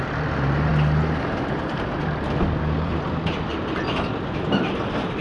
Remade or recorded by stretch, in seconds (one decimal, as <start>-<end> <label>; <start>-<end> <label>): 0.0-0.7 remade; 0.7-1.3 recorded; 1.3-5.2 remade